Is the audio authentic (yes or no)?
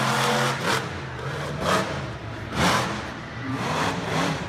no